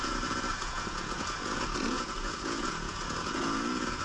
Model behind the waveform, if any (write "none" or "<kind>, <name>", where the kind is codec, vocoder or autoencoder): vocoder, Vocos